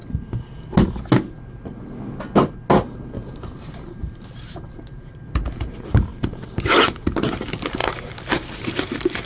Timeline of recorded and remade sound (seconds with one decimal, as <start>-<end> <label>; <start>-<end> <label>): 0.0-3.3 recorded; 3.3-9.3 remade